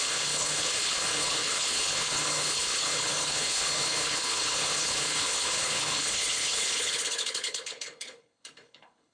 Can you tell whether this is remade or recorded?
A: remade